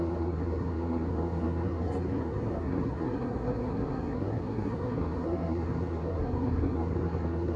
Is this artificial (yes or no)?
yes